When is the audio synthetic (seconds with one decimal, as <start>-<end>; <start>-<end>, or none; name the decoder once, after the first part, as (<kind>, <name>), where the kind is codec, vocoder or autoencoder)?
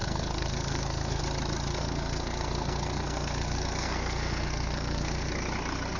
0.0-1.2 (codec, SNAC); 1.7-5.3